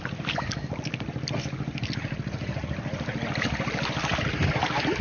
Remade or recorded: recorded